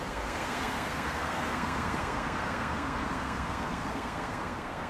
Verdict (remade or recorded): remade